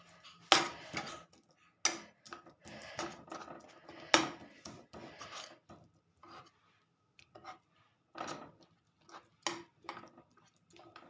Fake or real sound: real